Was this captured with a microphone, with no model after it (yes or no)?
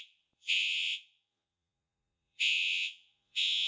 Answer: no